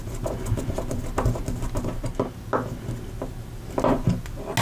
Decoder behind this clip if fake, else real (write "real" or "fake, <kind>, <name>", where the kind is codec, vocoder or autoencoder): real